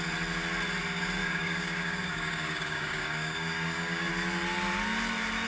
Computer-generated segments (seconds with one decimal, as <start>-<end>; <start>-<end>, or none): 1.2-4.1